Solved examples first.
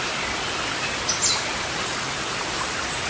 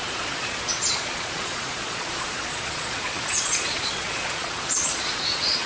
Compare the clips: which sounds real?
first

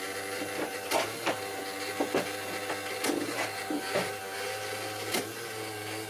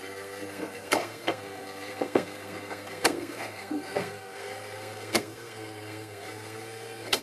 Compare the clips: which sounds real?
first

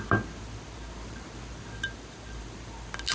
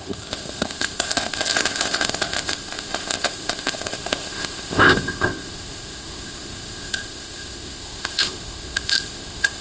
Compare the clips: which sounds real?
first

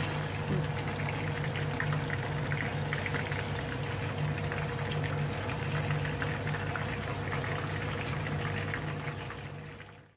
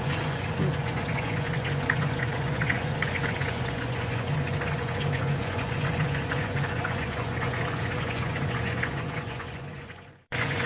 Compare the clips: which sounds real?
first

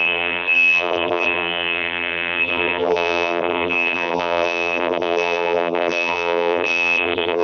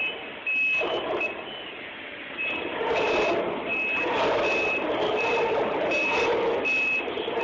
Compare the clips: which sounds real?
second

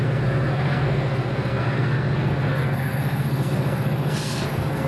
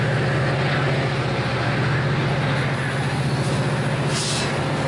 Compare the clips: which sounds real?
second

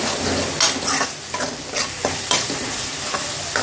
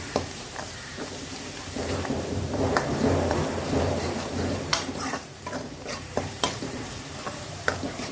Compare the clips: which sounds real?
first